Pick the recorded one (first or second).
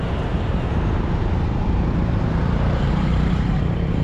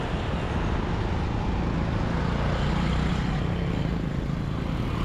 second